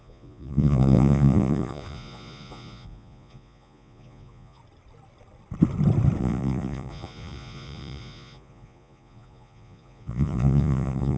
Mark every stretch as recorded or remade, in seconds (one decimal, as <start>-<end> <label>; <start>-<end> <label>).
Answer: 0.0-4.6 remade; 4.6-6.2 recorded; 6.2-11.2 remade

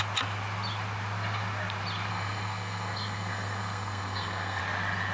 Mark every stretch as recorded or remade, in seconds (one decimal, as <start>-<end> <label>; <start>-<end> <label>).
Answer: 0.0-2.1 recorded; 2.1-4.6 remade; 4.6-5.1 recorded

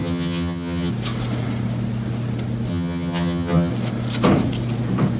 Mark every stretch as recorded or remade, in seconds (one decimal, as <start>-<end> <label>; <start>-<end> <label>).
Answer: 0.0-0.9 remade; 0.9-2.7 recorded; 2.7-3.7 remade; 3.7-5.2 recorded

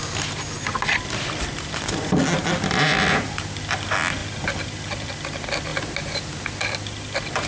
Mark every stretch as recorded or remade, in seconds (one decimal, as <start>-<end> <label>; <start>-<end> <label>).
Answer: 0.0-7.5 recorded

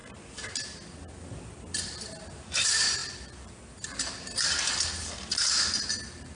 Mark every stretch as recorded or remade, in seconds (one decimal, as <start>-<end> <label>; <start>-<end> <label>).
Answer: 0.0-3.0 recorded; 3.0-3.6 remade; 3.6-6.3 recorded

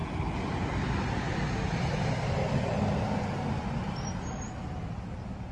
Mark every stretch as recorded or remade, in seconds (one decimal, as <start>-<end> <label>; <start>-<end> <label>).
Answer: 0.0-5.5 recorded